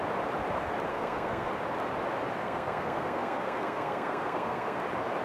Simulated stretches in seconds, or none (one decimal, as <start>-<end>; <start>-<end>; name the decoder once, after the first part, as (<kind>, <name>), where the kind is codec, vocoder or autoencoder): 0.9-1.5 (codec, SNAC); 2.4-4.8

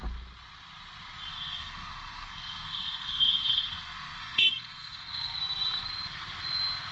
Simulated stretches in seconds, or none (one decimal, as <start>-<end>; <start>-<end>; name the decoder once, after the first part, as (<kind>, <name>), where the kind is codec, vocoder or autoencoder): 1.3-5.4 (codec, SNAC)

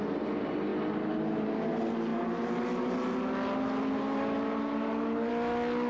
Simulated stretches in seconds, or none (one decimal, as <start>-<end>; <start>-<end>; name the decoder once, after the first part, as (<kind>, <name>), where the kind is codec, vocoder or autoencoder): none

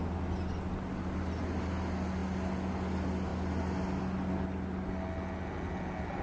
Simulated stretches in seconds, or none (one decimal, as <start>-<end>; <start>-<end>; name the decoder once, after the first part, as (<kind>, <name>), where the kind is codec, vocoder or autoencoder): none

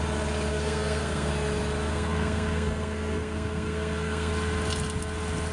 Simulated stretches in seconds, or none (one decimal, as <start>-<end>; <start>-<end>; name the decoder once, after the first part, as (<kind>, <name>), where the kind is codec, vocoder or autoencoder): 0.5-1.3 (codec, SNAC); 1.9-4.3

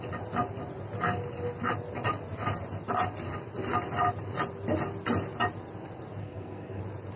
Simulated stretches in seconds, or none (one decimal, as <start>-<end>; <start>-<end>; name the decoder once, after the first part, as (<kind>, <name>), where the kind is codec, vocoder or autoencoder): 6.2-6.8 (codec, SNAC)

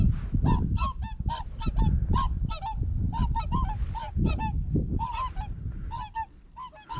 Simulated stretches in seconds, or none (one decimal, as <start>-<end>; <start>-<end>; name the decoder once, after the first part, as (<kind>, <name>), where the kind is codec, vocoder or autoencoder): none

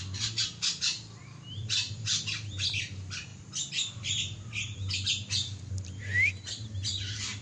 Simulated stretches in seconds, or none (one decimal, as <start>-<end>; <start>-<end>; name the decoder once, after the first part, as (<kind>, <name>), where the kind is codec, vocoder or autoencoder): none